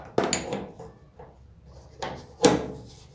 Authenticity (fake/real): real